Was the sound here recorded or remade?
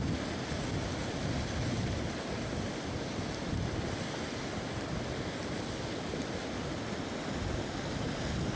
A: recorded